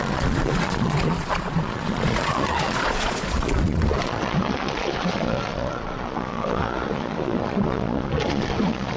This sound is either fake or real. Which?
fake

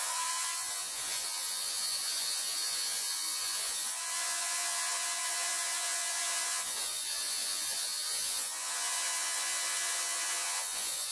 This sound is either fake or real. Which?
fake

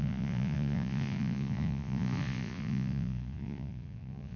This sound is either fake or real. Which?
fake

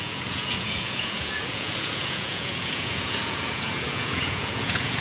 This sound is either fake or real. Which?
fake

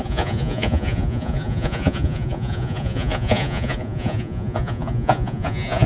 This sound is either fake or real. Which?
fake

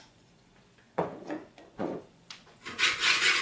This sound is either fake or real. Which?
fake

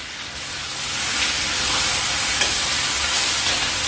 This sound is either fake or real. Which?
real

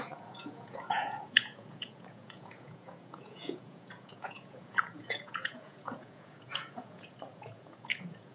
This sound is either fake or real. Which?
fake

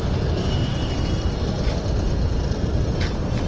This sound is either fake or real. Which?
real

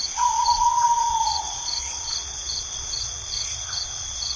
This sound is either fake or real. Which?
fake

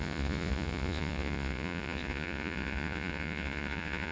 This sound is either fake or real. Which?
fake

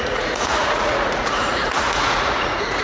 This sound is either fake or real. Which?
fake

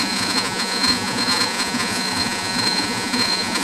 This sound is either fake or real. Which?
fake